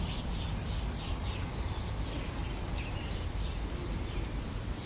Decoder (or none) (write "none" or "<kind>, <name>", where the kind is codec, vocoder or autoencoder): none